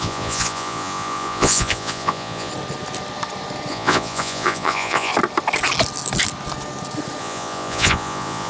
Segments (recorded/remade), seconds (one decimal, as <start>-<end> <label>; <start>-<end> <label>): 0.0-2.5 remade; 2.5-3.7 recorded; 3.7-5.1 remade; 5.1-7.2 recorded; 7.2-8.5 remade